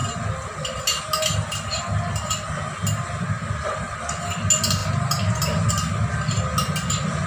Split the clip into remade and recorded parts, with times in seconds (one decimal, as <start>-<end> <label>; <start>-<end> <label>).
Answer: 0.0-7.3 recorded